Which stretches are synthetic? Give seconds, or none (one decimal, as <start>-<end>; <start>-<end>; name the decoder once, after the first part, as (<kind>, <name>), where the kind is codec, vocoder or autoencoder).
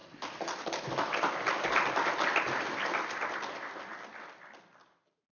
none